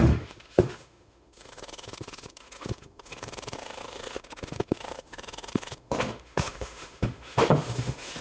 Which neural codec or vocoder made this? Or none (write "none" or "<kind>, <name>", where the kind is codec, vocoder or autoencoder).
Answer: autoencoder, DAC-VAE